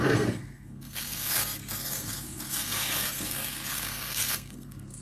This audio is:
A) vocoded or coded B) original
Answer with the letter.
A